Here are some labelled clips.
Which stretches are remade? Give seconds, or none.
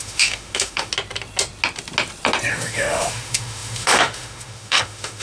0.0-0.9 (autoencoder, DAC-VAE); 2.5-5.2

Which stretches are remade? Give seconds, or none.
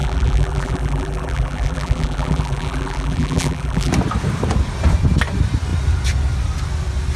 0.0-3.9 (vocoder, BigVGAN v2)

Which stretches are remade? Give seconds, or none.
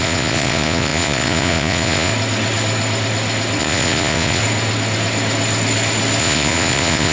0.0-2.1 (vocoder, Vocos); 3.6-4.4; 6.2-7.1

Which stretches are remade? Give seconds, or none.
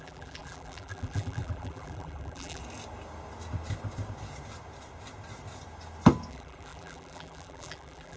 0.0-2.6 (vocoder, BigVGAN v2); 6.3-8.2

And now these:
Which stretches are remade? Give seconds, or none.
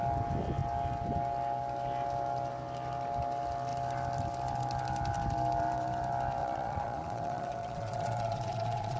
6.4-9.0 (vocoder, Vocos)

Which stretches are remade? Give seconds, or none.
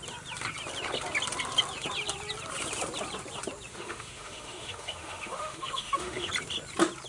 3.7-6.3 (autoencoder, DAC-VAE)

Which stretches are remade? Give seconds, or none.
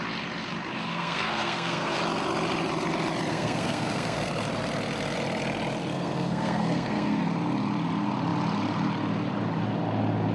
0.9-2.0 (codec, SNAC); 3.3-4.3; 5.9-7.2